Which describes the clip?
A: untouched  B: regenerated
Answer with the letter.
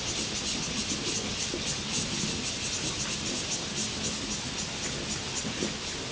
A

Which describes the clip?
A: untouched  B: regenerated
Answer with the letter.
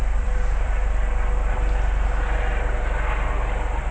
B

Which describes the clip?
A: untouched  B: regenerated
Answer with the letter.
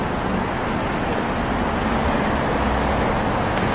A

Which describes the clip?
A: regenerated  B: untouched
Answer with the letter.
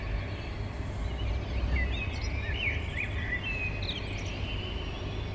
B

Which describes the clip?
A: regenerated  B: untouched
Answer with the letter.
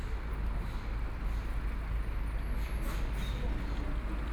B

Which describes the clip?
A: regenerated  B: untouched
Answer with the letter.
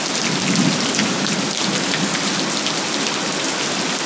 B